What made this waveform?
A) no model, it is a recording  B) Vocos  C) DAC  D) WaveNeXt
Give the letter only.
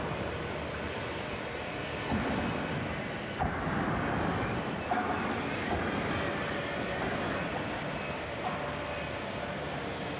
A